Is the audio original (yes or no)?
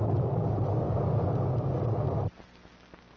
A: yes